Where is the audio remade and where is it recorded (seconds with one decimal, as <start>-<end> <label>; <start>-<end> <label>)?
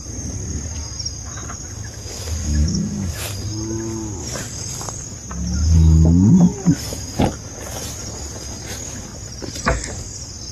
0.0-2.4 recorded; 2.4-3.1 remade; 3.1-10.5 recorded